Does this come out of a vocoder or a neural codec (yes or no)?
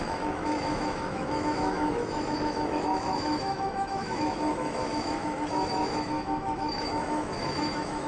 yes